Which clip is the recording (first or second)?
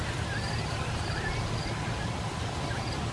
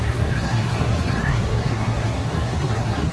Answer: first